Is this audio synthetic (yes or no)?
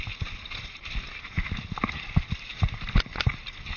no